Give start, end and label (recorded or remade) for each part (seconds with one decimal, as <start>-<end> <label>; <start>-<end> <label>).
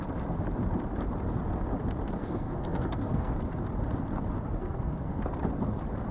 0.0-2.2 recorded; 2.2-3.3 remade; 3.3-4.6 recorded; 4.6-5.2 remade; 5.2-6.1 recorded